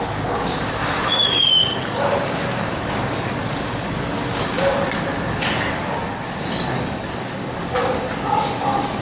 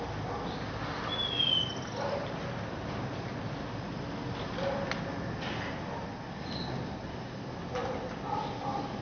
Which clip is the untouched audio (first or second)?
second